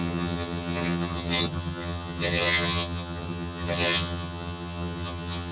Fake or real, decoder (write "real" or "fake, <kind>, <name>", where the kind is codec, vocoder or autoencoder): fake, vocoder, HiFi-GAN